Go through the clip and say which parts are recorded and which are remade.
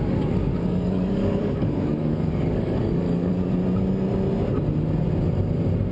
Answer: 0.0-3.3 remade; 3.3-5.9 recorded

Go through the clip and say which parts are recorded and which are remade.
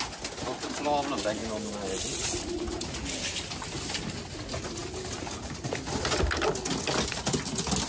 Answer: 0.0-7.9 recorded